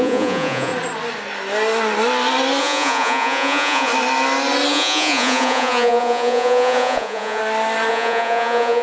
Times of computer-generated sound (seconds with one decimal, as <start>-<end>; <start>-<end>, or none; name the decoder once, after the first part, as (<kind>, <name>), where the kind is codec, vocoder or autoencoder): 0.0-0.7 (vocoder, Vocos); 2.6-3.9; 4.7-7.4; 7.9-8.8